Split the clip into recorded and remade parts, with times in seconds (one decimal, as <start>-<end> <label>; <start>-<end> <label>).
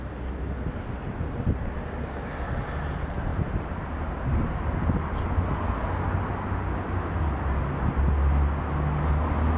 0.0-9.6 recorded